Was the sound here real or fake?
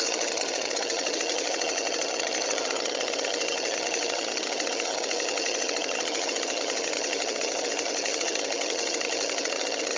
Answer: fake